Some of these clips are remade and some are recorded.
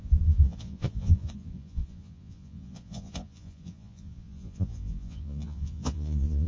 remade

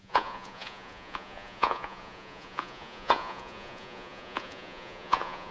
remade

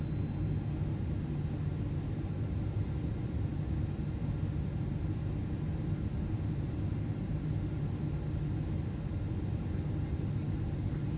recorded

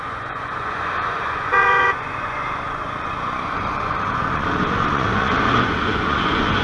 remade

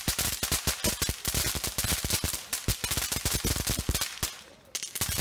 recorded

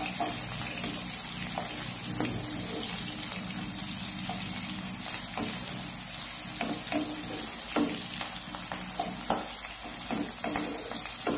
recorded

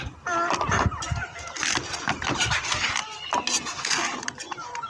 recorded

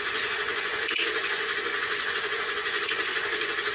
remade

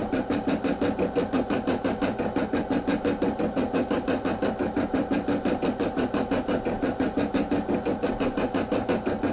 recorded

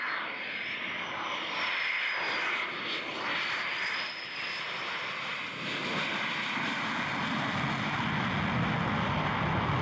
recorded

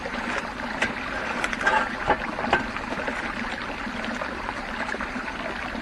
recorded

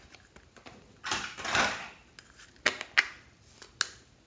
recorded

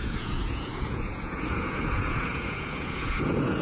remade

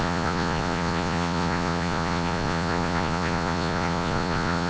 remade